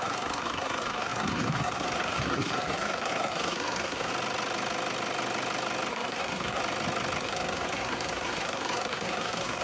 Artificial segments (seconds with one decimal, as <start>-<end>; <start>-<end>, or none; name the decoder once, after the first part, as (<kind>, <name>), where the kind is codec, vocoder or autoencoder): 0.0-4.1 (codec, SNAC); 5.9-6.6; 7.2-9.6

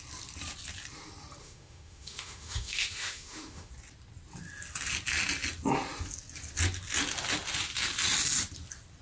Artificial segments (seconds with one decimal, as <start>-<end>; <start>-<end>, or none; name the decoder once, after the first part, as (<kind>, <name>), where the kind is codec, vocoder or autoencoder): 1.4-3.7 (autoencoder, DAC-VAE)

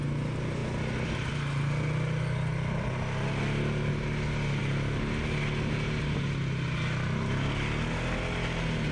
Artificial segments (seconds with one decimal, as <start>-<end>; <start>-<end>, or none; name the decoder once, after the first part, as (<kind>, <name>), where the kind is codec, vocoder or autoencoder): none

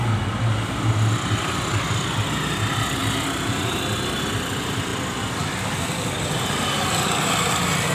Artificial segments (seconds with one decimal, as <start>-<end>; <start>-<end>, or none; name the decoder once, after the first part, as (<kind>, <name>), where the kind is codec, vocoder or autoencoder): none

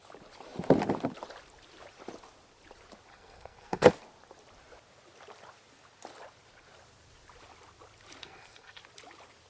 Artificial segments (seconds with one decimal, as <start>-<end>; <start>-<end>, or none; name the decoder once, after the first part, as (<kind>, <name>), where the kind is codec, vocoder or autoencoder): 3.1-3.9 (codec, SNAC); 8.2-8.8

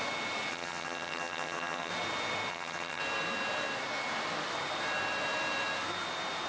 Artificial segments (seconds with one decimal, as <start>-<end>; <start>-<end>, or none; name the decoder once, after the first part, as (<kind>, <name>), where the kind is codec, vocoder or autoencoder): 0.5-1.9 (vocoder, HiFi-GAN); 2.5-3.0